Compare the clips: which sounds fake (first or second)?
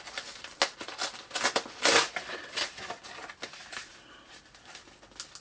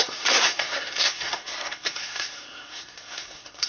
second